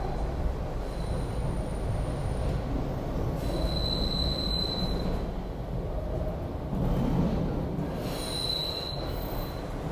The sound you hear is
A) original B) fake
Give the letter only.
A